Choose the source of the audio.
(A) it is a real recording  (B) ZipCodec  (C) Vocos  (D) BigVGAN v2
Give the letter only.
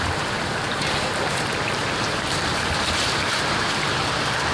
D